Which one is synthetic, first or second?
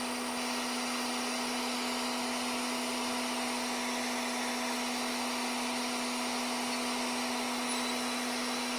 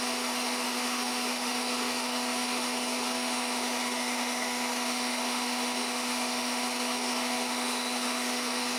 second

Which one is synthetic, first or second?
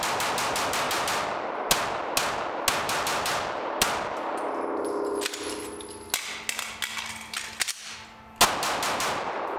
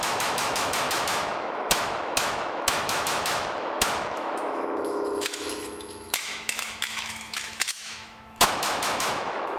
second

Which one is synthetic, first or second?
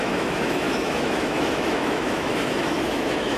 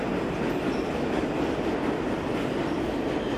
first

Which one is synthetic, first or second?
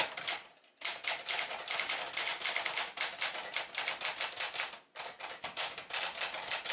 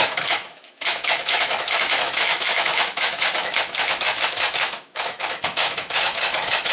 second